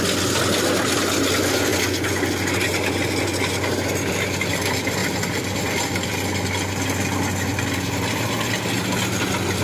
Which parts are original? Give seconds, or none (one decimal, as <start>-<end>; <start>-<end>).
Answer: 0.0-5.0; 6.5-9.6